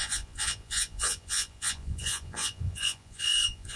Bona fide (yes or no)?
no